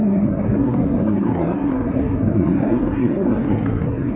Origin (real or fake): fake